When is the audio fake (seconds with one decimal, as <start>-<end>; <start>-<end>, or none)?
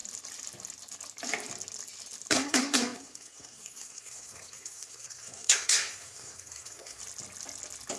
2.3-7.0